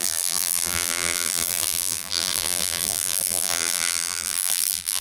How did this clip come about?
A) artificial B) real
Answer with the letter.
A